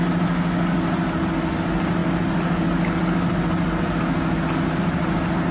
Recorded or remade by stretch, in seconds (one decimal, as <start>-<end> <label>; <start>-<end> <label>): 0.0-5.5 recorded